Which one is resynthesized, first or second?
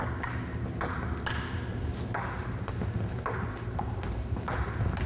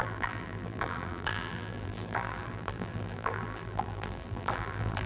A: second